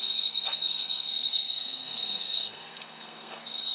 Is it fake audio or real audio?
fake